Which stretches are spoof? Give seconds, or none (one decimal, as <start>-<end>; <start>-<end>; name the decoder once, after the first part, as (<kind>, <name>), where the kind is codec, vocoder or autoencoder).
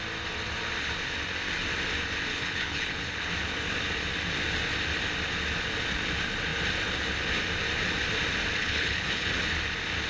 2.3-3.3 (codec, HILCodec); 8.6-9.3